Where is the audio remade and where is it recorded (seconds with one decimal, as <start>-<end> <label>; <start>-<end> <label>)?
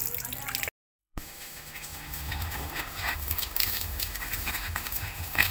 0.0-1.0 recorded; 1.0-5.5 remade